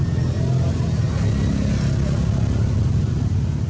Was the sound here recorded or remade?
recorded